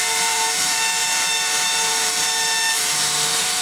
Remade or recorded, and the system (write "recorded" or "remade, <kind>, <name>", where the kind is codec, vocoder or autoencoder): remade, vocoder, BigVGAN v2